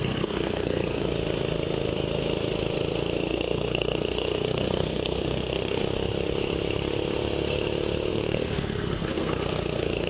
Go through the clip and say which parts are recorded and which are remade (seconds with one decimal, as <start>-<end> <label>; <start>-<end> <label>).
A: 0.0-1.1 remade; 1.1-3.3 recorded; 3.3-5.8 remade; 5.8-8.1 recorded; 8.1-10.1 remade